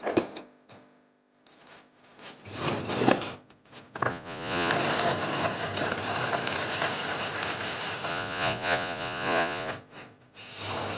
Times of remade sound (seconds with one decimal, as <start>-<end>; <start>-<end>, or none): 4.1-4.7; 8.1-9.7